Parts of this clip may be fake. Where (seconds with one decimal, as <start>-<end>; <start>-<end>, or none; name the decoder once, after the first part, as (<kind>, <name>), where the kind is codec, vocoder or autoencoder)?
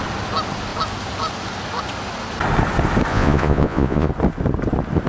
3.1-4.1 (vocoder, Vocos)